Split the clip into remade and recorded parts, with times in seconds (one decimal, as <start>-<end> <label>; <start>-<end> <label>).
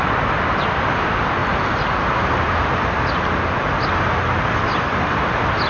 0.0-5.7 recorded